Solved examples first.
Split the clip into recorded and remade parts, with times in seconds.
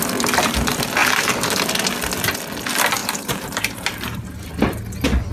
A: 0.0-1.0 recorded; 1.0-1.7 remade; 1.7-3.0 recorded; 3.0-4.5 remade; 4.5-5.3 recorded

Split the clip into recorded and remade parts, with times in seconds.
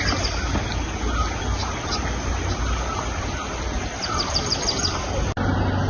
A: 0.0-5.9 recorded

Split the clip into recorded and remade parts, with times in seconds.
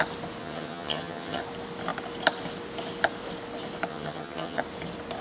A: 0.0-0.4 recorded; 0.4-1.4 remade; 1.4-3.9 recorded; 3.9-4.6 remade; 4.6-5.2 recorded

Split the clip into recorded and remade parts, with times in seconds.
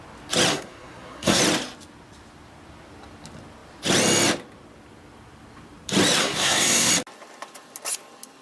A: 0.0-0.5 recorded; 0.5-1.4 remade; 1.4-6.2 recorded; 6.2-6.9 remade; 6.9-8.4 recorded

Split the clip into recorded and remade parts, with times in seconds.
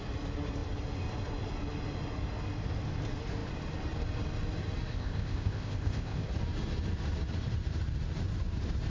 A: 0.0-4.9 recorded; 4.9-6.3 remade; 6.3-8.9 recorded